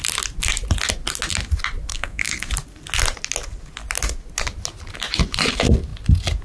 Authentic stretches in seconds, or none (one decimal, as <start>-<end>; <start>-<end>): 0.0-1.9; 2.5-6.4